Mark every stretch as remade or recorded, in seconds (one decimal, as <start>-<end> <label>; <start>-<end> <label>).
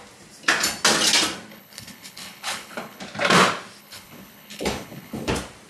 0.0-1.5 recorded; 1.5-3.0 remade; 3.0-3.8 recorded; 3.8-5.3 remade; 5.3-5.7 recorded